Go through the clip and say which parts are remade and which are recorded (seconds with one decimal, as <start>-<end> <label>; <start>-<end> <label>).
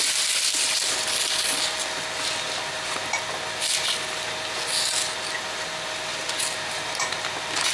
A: 0.0-7.7 recorded